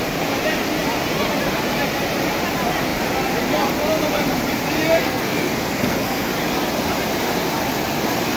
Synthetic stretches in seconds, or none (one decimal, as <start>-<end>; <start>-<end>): 5.0-6.3